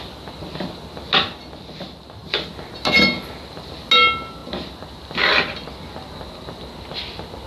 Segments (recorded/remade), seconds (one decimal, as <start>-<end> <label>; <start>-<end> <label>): 0.0-7.5 recorded